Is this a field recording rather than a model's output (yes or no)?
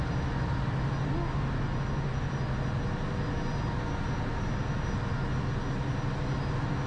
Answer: yes